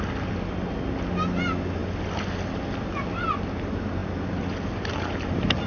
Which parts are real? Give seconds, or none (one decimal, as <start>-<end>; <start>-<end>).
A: 0.0-5.7